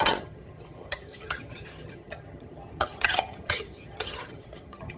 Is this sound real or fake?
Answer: fake